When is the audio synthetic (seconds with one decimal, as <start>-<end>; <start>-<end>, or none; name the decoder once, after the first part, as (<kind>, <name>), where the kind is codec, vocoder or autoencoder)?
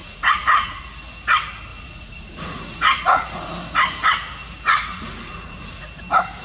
0.0-0.8 (vocoder, Vocos); 1.7-3.5; 4.9-5.8